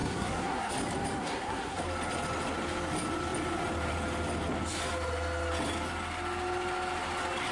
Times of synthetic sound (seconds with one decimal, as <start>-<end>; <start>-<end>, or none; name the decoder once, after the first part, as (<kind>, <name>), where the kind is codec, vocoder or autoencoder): 0.0-0.7 (codec, SNAC); 1.2-1.8